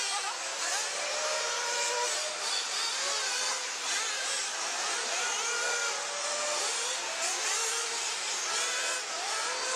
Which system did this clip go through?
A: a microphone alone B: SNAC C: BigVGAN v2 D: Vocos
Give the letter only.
A